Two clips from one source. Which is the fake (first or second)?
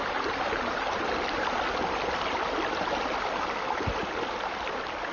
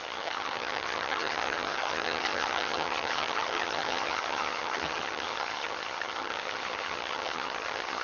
second